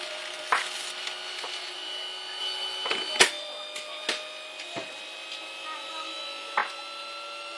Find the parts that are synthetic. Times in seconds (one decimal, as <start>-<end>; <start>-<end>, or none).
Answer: none